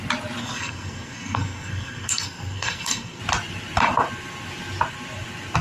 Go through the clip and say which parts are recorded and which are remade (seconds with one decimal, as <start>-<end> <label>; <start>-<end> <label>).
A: 0.0-0.4 recorded; 0.4-3.2 remade; 3.2-5.6 recorded

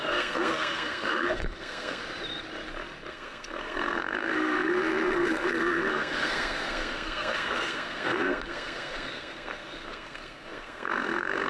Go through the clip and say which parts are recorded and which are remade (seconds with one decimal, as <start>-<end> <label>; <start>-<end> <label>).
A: 0.0-2.0 remade; 2.0-3.1 recorded; 3.1-11.5 remade

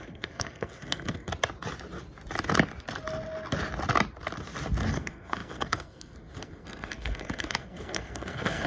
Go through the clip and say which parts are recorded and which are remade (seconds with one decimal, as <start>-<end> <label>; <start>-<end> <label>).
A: 0.0-1.3 remade; 1.3-4.9 recorded; 4.9-8.7 remade

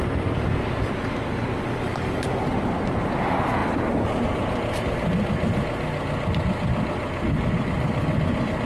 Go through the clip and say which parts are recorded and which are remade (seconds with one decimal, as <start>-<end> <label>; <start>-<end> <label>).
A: 0.0-8.6 recorded

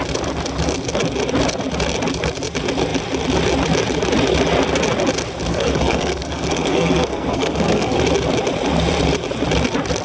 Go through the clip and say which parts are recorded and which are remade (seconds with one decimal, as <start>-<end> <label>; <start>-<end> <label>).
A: 0.0-5.5 recorded; 5.5-8.0 remade; 8.0-10.0 recorded

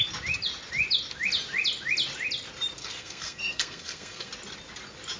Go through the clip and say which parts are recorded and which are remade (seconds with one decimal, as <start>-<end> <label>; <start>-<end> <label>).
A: 0.0-2.8 recorded; 2.8-4.3 remade; 4.3-5.2 recorded